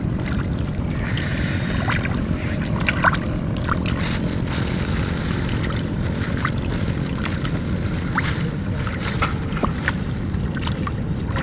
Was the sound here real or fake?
fake